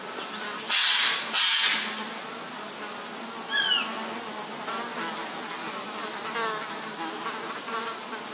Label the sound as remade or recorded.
recorded